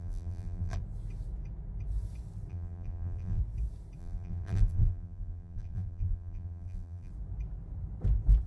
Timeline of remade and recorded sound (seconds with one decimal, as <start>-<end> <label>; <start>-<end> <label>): 0.0-0.8 remade; 0.8-2.5 recorded; 2.5-3.4 remade; 3.4-4.0 recorded; 4.0-7.1 remade; 7.1-8.5 recorded